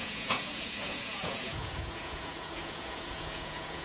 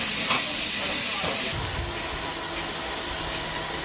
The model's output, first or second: first